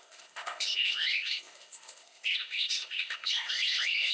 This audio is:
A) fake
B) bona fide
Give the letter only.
A